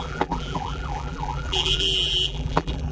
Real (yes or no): no